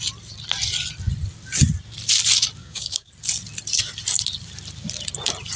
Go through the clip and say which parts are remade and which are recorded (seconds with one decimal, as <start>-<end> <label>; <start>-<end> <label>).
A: 0.0-2.6 recorded; 2.6-3.1 remade; 3.1-5.6 recorded